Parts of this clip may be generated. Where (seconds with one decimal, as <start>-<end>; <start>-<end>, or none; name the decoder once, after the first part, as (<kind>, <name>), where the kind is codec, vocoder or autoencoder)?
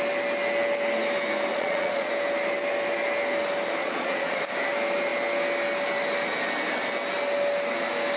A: 1.5-2.1 (vocoder, Vocos); 3.8-4.4